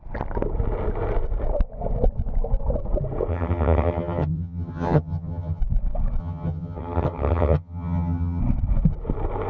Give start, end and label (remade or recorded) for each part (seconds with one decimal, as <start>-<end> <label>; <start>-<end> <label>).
0.0-3.3 recorded; 3.3-5.6 remade; 5.6-6.2 recorded; 6.2-8.4 remade; 8.4-9.5 recorded